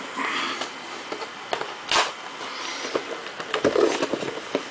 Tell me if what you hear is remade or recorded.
recorded